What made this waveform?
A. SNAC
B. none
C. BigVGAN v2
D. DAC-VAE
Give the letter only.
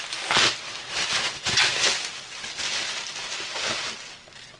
B